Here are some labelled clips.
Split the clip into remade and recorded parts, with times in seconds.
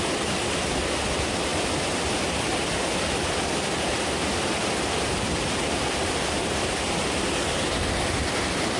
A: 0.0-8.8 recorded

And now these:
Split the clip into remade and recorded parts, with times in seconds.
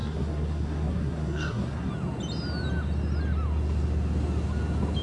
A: 0.0-1.9 remade; 1.9-5.0 recorded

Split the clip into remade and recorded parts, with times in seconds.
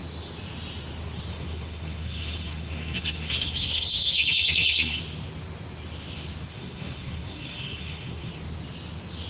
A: 0.0-1.3 recorded; 1.3-5.0 remade; 5.0-6.5 recorded; 6.5-8.3 remade; 8.3-9.3 recorded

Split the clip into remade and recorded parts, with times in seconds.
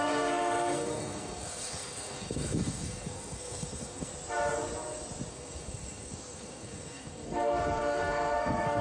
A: 0.0-4.1 remade; 4.1-5.3 recorded; 5.3-8.8 remade